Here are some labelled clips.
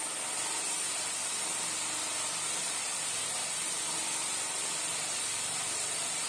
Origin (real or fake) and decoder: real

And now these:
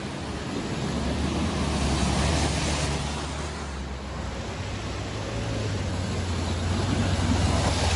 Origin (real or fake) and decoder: real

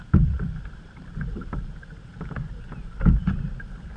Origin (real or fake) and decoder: fake, vocoder, BigVGAN v2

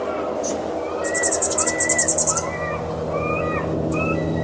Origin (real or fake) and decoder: real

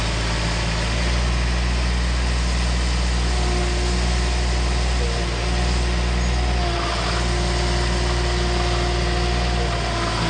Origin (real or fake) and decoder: real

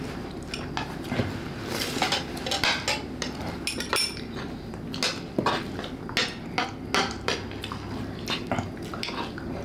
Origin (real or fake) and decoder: real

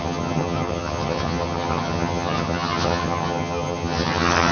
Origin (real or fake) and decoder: fake, vocoder, HiFi-GAN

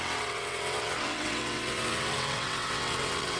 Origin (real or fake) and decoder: fake, vocoder, WaveNeXt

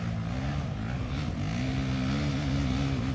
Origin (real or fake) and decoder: real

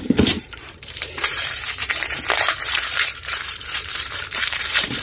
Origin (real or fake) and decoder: fake, vocoder, BigVGAN v2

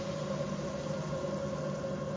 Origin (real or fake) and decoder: real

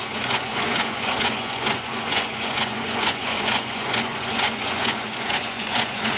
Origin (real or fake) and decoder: fake, vocoder, Vocos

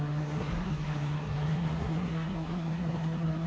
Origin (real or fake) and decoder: fake, codec, SNAC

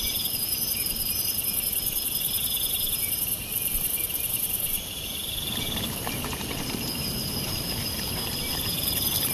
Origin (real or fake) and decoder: fake, vocoder, BigVGAN v2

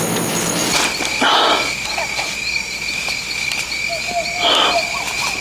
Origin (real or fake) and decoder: real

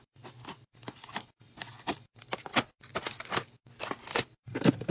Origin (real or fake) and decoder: real